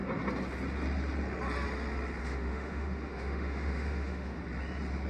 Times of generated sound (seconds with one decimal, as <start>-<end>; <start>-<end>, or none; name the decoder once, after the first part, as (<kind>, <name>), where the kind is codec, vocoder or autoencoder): 2.2-4.4 (autoencoder, DAC-VAE)